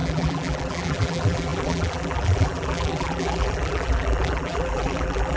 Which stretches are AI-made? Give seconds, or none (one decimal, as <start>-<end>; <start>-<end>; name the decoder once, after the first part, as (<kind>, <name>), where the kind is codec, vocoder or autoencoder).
0.0-5.4 (vocoder, BigVGAN v2)